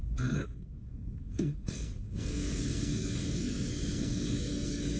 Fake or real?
fake